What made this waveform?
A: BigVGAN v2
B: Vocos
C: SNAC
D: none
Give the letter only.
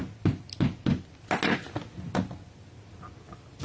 D